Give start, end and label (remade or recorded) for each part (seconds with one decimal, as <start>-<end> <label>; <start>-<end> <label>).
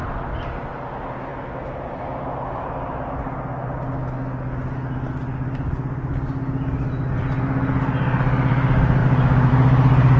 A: 0.0-10.2 recorded